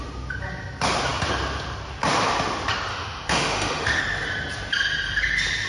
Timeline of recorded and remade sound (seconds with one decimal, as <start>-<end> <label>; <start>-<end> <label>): 0.0-2.9 recorded; 2.9-4.0 remade; 4.0-5.7 recorded